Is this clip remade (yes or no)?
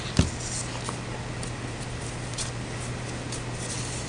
no